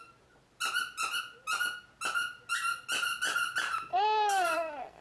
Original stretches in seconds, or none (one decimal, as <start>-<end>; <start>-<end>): 0.0-3.9